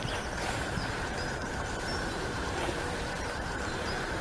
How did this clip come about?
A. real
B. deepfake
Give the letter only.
B